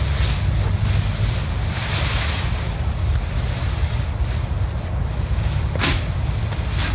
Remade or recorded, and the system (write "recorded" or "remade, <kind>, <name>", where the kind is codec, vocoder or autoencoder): recorded